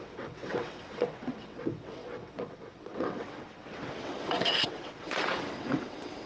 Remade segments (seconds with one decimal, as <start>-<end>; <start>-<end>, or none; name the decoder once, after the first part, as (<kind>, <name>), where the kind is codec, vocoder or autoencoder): 0.0-6.3 (vocoder, WaveNeXt)